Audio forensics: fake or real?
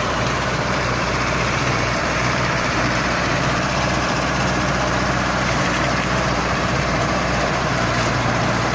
fake